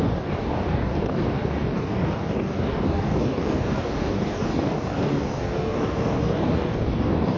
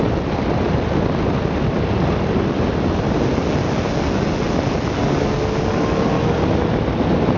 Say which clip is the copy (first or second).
first